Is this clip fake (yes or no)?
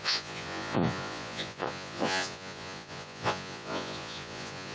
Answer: yes